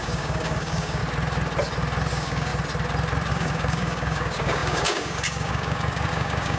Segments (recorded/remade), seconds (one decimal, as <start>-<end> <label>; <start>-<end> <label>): 0.0-1.0 remade; 1.0-2.1 recorded; 2.1-2.5 remade; 2.5-3.3 recorded; 3.3-6.6 remade